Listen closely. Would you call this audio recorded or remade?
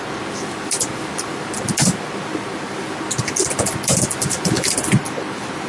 recorded